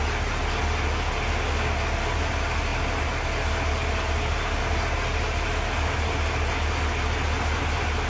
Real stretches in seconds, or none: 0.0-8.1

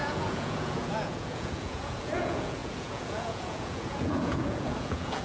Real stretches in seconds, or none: none

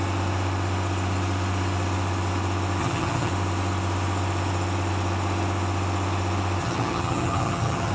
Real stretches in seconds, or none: 0.0-2.8; 3.3-6.6

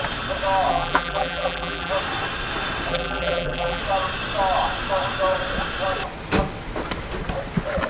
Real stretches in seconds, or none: 0.0-0.7; 1.9-2.9; 3.8-7.9

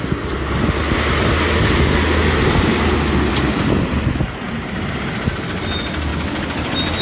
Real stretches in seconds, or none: 0.0-7.0